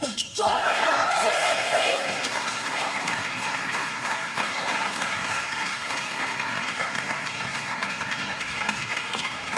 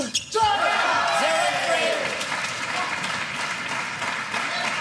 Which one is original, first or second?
second